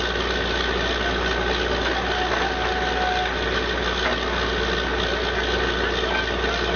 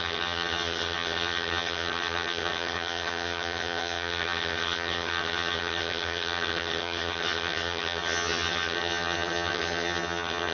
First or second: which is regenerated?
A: second